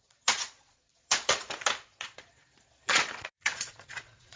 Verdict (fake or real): fake